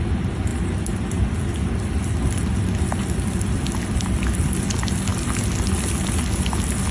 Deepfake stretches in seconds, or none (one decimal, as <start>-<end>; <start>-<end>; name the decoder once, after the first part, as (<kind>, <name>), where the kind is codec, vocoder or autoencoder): none